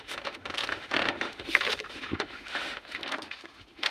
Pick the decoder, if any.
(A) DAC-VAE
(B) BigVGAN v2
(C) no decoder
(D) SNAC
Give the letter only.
A